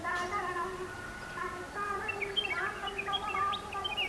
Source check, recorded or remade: recorded